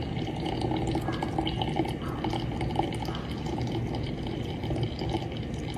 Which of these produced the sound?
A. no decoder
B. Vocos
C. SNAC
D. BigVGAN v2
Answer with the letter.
A